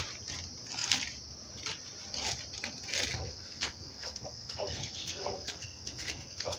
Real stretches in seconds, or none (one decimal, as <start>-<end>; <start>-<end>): 0.0-3.1